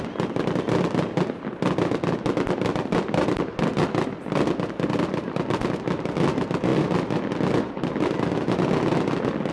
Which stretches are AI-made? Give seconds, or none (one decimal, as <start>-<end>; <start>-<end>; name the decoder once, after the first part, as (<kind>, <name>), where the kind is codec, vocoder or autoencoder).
none